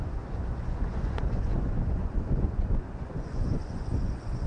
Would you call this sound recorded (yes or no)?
no